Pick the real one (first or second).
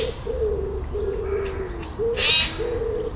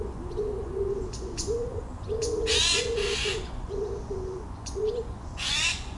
first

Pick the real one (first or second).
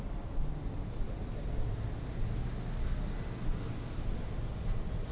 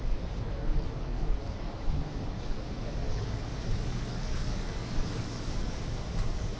first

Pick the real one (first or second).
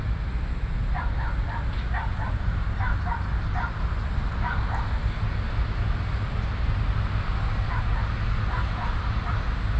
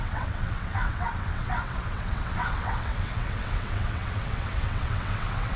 first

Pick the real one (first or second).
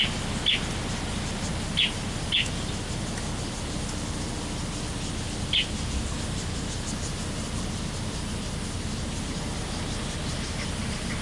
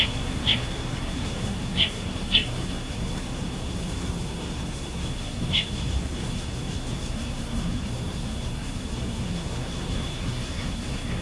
first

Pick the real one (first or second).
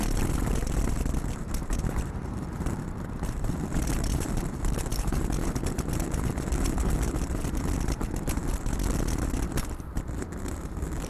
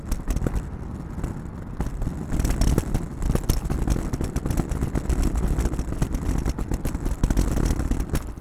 second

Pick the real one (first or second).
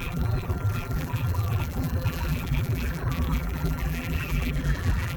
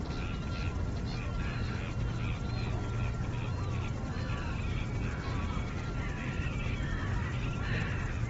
second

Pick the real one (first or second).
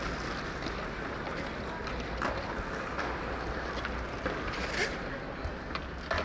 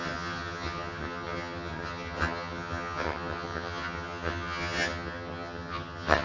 first